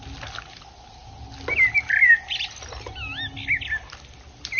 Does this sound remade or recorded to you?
recorded